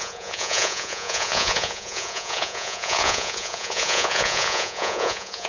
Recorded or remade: remade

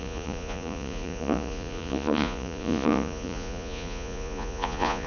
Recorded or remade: remade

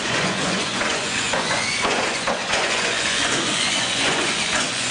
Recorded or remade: remade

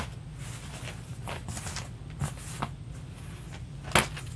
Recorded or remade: recorded